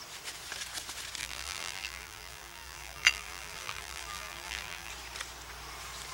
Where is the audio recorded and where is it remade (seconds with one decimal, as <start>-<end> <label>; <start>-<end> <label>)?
0.0-1.2 recorded; 1.2-4.9 remade; 4.9-6.1 recorded